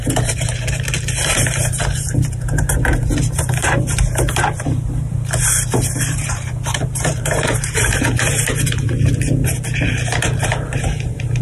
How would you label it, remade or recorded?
remade